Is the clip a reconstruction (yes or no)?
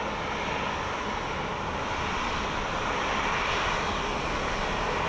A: no